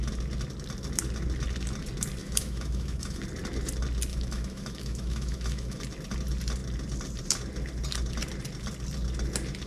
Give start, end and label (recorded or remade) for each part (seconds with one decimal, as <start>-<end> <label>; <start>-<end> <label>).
0.0-2.2 recorded; 2.2-3.2 remade; 3.2-4.1 recorded; 4.1-5.8 remade; 5.8-9.7 recorded

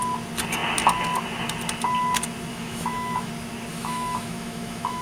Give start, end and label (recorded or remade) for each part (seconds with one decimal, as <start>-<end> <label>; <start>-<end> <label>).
0.0-2.5 recorded; 2.5-3.3 remade; 3.3-3.7 recorded; 3.7-5.0 remade